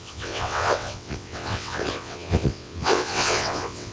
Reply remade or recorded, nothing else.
remade